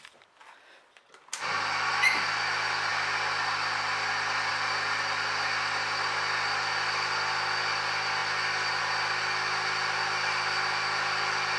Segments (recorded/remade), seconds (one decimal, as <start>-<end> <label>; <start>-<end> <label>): 0.0-0.4 recorded; 0.4-1.5 remade; 1.5-11.6 recorded